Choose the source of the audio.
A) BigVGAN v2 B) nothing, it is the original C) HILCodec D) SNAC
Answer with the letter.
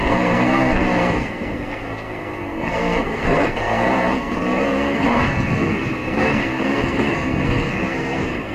D